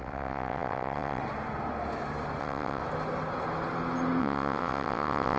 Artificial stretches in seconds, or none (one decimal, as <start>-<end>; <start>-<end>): 0.0-1.2; 2.4-2.8; 4.2-5.4